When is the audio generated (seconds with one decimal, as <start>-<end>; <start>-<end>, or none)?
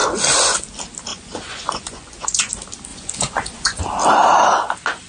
1.1-2.5; 2.9-3.8